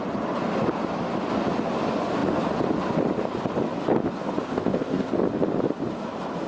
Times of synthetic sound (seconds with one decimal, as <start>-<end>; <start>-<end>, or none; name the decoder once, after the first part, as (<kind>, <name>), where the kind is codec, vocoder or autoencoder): 4.4-5.1 (codec, ZipCodec)